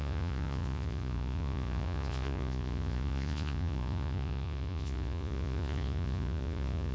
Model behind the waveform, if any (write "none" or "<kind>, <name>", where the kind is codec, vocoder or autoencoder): vocoder, Vocos